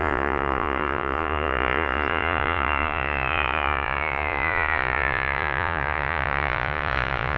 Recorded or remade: remade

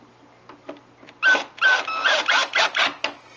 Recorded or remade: recorded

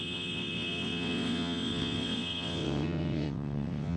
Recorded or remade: remade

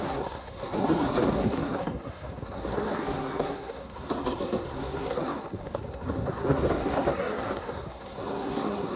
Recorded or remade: remade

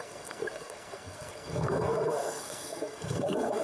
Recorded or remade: remade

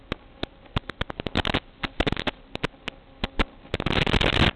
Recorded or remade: recorded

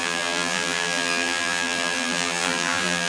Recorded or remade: remade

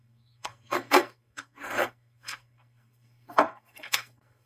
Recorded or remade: remade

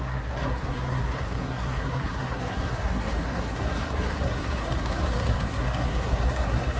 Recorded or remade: remade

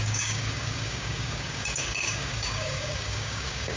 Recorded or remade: remade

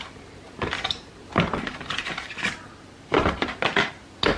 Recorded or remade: recorded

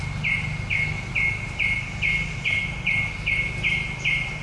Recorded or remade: recorded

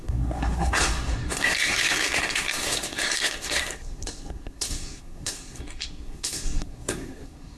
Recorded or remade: remade